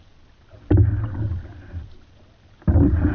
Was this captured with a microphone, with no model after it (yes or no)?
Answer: yes